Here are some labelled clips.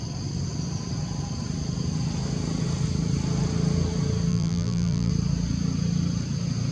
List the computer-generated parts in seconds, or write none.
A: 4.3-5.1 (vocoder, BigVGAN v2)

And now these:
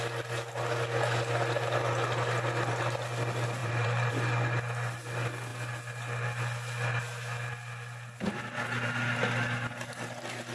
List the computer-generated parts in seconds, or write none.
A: 3.6-4.1 (vocoder, BigVGAN v2)